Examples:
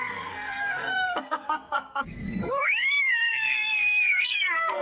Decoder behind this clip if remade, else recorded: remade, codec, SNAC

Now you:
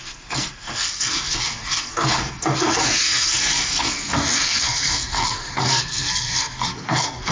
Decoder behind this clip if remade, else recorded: remade, codec, SNAC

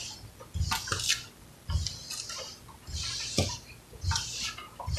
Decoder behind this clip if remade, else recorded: recorded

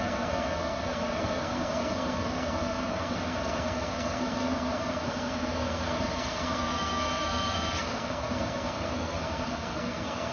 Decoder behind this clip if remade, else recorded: remade, codec, SNAC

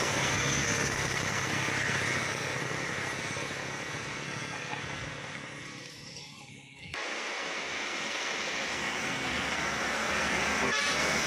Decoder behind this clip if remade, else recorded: remade, codec, SNAC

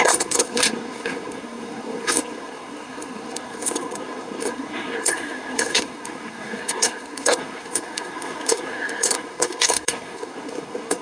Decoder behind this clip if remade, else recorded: remade, codec, SNAC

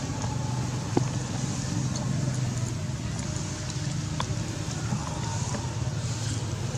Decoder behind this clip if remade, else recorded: recorded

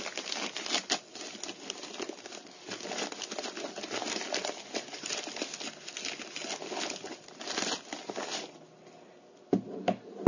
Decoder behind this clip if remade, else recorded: recorded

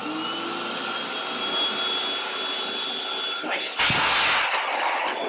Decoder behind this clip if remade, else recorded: recorded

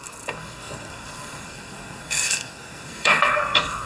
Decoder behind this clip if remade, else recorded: remade, codec, SNAC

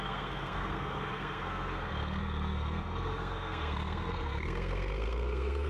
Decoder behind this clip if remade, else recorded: remade, codec, SNAC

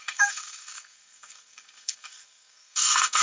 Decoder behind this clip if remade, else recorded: remade, codec, SNAC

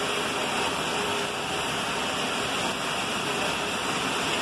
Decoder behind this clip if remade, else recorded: recorded